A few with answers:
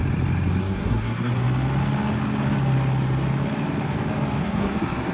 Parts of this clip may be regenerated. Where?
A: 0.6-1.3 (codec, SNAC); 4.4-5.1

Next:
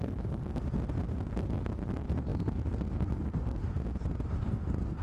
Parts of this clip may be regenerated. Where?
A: 0.0-0.6 (codec, SNAC); 1.3-3.6; 4.4-5.0

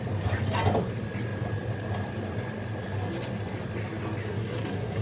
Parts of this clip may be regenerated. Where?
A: 4.2-5.0 (codec, SNAC)

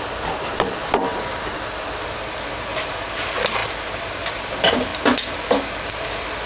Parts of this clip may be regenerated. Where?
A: none

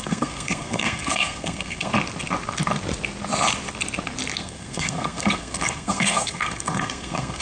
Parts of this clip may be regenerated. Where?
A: 0.0-1.9 (codec, SNAC); 4.4-7.4

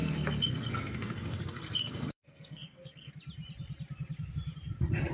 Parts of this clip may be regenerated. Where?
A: 0.0-3.1 (codec, SNAC)

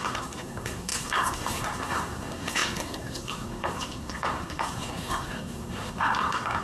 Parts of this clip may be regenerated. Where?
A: 0.0-6.6 (codec, SNAC)

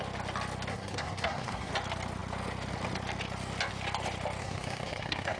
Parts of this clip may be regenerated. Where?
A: 0.7-1.7 (codec, SNAC); 4.4-5.4